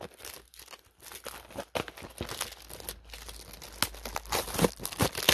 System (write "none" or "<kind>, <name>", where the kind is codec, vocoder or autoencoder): none